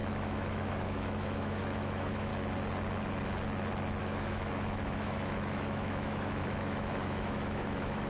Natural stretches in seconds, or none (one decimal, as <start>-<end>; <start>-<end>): 2.3-4.0